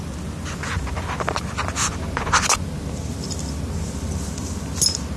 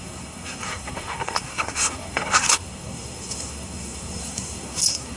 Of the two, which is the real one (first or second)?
first